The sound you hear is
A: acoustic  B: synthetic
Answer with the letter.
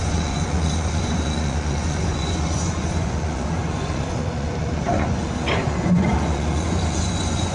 B